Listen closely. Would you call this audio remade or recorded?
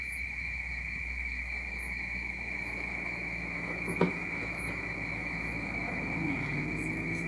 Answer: remade